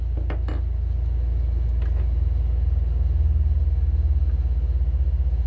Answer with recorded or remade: recorded